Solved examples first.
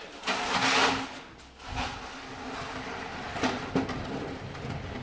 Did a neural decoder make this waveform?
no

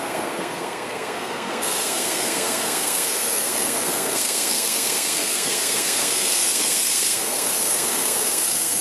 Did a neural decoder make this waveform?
yes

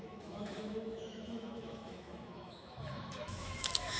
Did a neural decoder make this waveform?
yes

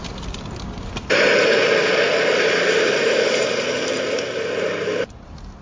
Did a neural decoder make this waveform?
no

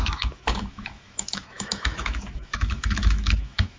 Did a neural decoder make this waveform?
yes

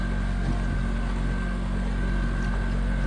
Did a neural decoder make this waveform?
no